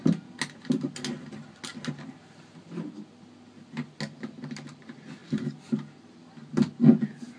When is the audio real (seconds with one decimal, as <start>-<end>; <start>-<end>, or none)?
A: 0.0-7.4